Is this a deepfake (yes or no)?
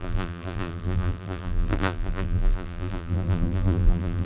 yes